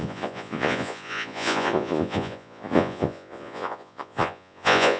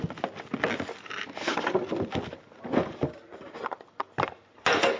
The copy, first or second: first